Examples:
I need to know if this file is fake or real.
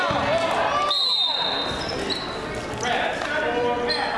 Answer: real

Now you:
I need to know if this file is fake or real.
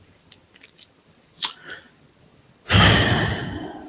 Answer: fake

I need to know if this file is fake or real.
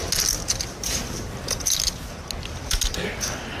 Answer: real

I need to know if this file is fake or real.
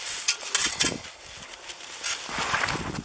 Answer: real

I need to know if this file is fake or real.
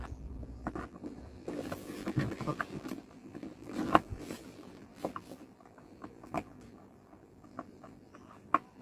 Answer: fake